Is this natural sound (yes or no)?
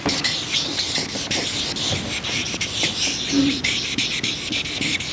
yes